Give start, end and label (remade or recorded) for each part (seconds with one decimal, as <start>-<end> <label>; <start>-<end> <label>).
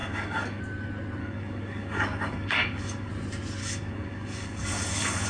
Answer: 0.0-0.6 remade; 0.6-1.2 recorded; 1.2-3.1 remade; 3.1-3.6 recorded; 3.6-5.3 remade